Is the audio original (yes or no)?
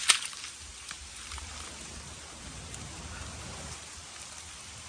yes